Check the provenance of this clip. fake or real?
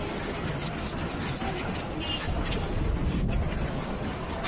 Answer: real